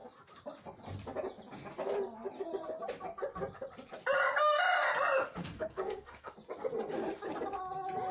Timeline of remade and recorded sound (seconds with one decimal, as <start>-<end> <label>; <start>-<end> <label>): 0.0-5.4 recorded; 5.4-6.3 remade; 6.3-8.1 recorded